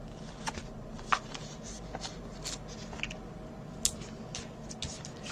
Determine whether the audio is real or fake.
real